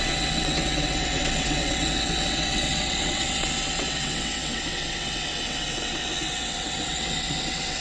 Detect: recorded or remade remade